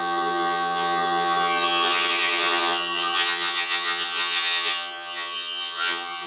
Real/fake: fake